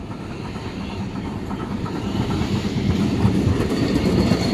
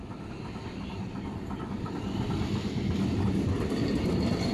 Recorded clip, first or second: second